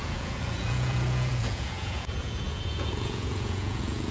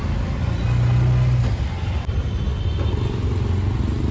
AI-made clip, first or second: first